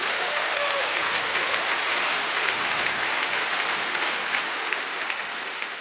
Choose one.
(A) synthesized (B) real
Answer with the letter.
A